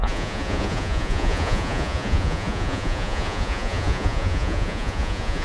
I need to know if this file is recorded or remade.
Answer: remade